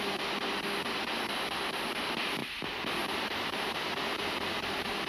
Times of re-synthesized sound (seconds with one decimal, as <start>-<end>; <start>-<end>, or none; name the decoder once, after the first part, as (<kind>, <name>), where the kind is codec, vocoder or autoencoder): 2.4-5.1 (vocoder, BigVGAN v2)